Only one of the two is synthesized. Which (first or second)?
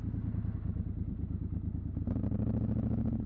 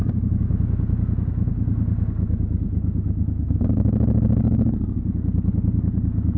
second